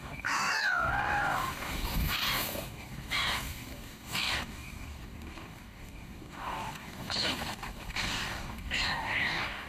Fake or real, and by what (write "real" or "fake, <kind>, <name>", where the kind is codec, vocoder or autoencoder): fake, codec, DAC